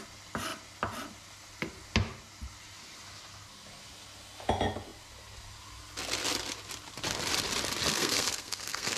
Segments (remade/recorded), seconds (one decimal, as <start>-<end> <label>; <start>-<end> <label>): 0.0-7.9 recorded; 7.9-9.0 remade